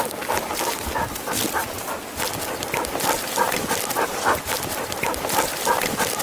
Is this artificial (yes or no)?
no